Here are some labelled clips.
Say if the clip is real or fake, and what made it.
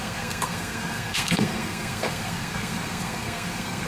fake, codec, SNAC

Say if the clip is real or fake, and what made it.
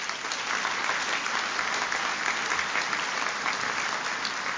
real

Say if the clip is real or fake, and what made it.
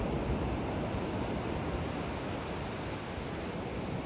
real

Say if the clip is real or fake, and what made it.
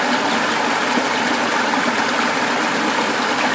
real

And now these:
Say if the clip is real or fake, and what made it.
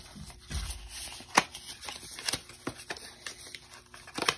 real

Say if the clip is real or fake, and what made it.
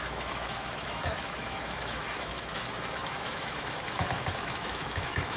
fake, autoencoder, DAC-VAE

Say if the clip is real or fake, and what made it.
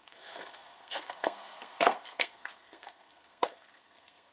fake, codec, SNAC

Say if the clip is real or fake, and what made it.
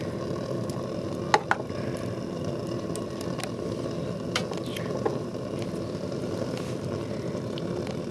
real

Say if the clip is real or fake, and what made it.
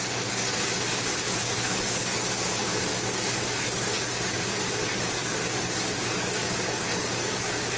fake, codec, DAC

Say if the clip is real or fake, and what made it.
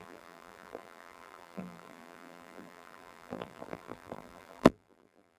fake, vocoder, BigVGAN v2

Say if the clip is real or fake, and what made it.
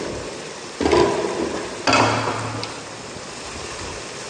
real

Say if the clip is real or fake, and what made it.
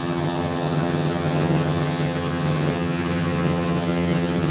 fake, vocoder, HiFi-GAN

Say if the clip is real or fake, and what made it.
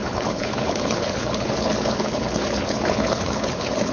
fake, codec, HILCodec